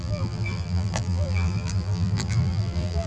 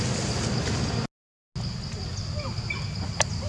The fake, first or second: first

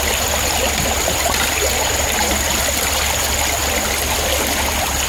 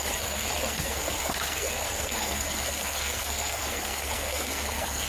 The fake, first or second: second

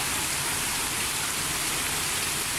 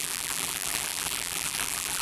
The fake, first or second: second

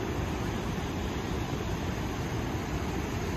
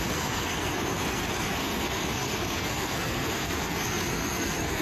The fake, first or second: second